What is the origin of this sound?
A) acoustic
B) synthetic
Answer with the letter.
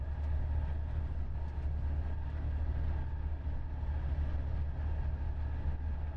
A